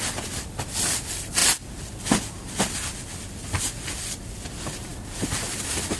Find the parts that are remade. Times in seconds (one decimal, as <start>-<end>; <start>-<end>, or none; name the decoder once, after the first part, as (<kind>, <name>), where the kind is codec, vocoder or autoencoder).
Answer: none